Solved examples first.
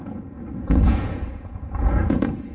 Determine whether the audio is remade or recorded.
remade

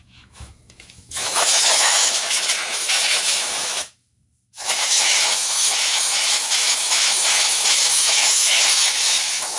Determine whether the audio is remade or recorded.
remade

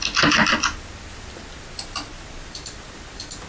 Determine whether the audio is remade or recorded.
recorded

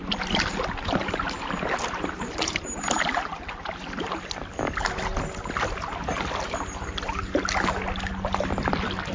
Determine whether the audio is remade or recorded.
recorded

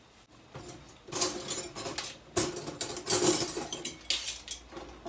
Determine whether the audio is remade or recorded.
recorded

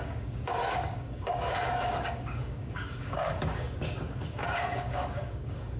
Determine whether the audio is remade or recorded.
remade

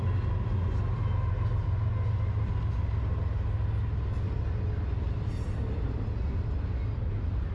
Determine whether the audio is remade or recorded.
recorded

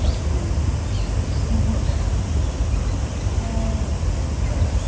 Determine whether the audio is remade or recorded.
recorded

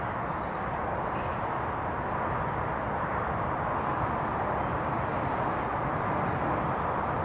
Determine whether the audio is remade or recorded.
recorded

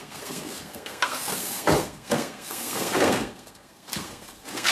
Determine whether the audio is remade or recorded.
remade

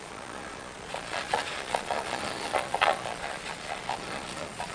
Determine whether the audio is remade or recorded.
remade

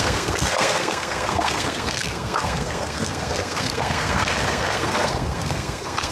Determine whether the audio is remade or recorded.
remade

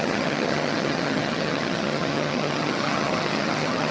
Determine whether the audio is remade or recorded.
remade